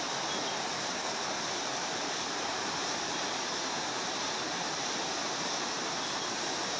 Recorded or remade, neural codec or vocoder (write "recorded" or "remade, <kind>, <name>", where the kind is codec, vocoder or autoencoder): remade, vocoder, BigVGAN v2